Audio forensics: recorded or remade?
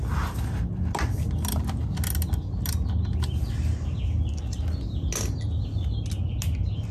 recorded